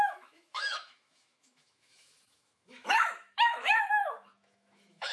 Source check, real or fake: fake